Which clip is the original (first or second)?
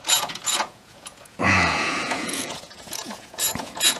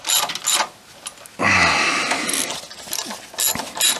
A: second